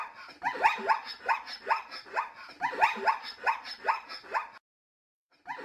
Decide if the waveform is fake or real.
real